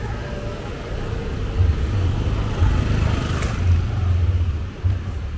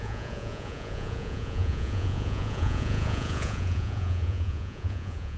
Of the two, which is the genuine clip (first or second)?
first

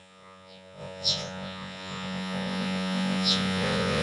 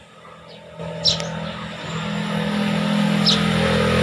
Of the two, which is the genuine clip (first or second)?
second